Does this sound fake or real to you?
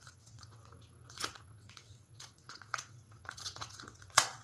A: fake